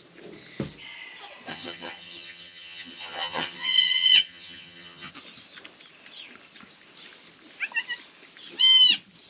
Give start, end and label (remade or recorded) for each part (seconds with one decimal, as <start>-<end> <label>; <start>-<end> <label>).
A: 0.0-1.5 recorded; 1.5-5.1 remade; 5.1-9.3 recorded